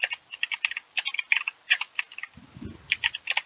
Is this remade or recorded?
recorded